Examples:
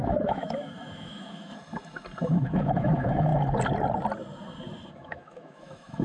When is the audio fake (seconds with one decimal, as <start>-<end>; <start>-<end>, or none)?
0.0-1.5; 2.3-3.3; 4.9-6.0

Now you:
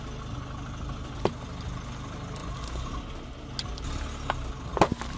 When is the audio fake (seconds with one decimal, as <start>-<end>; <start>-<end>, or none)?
none

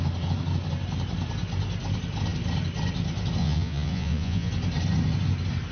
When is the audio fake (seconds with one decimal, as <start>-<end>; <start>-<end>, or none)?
3.4-4.5